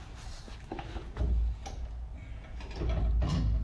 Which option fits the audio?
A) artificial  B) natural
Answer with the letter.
B